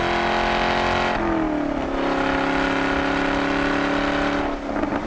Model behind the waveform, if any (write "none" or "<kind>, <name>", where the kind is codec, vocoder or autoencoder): none